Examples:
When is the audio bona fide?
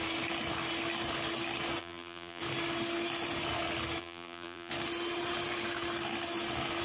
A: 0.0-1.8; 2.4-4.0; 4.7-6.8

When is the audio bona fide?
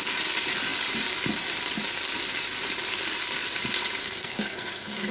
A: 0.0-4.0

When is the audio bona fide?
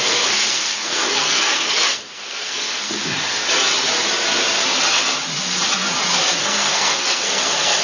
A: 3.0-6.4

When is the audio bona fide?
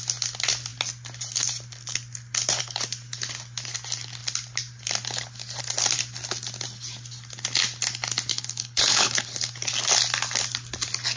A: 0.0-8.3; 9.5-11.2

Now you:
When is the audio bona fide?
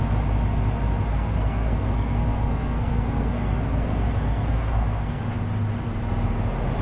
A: 0.0-1.1; 5.2-6.8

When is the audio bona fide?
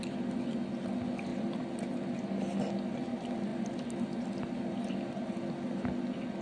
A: 0.0-6.4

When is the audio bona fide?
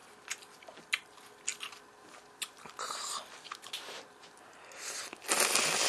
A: 0.0-5.9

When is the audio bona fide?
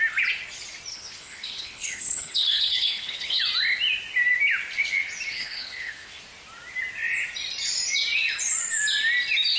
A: 0.0-0.9; 3.4-5.3; 6.2-9.6